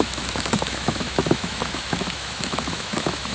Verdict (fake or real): fake